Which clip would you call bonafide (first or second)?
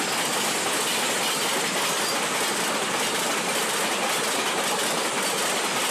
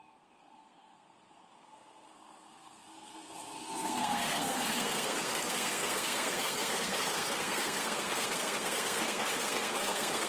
first